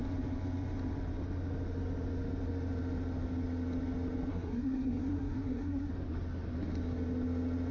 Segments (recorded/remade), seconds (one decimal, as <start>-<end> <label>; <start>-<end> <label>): 0.0-4.3 recorded; 4.3-5.9 remade; 5.9-7.7 recorded